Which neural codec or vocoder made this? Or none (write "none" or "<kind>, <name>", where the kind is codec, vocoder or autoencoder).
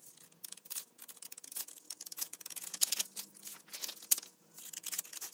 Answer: vocoder, Vocos